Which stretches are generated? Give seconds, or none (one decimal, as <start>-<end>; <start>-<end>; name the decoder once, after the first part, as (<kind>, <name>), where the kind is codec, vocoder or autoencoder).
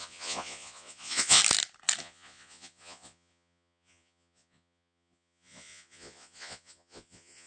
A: 0.0-1.4 (vocoder, Vocos); 2.0-7.5